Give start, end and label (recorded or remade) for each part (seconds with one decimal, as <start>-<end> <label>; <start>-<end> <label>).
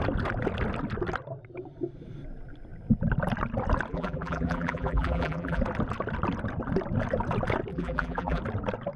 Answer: 0.0-3.9 recorded; 3.9-5.6 remade; 5.6-7.7 recorded; 7.7-8.4 remade; 8.4-9.0 recorded